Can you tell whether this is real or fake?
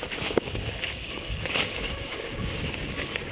fake